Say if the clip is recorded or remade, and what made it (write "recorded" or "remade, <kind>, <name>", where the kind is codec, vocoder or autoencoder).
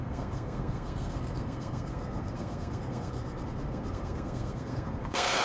remade, codec, SNAC